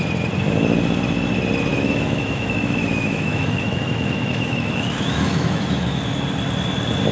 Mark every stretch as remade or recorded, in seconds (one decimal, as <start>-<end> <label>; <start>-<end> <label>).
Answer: 0.0-1.7 recorded; 1.7-6.0 remade; 6.0-7.1 recorded